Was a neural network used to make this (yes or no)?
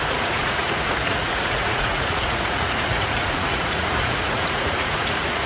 yes